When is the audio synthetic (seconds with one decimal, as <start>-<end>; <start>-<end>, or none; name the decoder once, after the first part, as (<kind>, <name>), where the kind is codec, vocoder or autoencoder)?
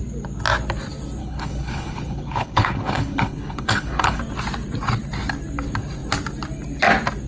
1.2-4.2 (codec, HILCodec)